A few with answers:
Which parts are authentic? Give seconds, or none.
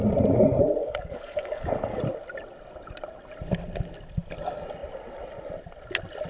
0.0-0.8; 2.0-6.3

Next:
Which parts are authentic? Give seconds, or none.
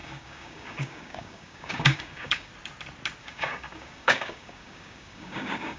2.5-3.2